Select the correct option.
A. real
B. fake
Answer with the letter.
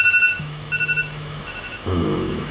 B